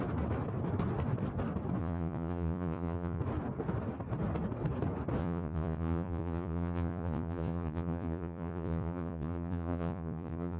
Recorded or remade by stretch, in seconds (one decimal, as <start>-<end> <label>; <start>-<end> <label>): 0.0-1.8 recorded; 1.8-3.2 remade; 3.2-5.2 recorded; 5.2-10.6 remade